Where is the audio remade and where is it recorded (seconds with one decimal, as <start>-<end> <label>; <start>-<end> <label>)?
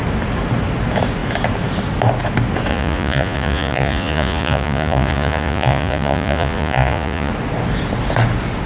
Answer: 0.0-2.7 recorded; 2.7-7.3 remade; 7.3-8.7 recorded